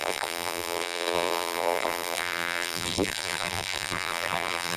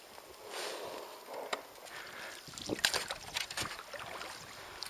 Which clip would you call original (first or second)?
second